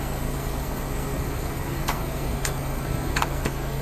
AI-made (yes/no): yes